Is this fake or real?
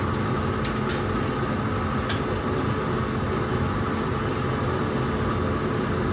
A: real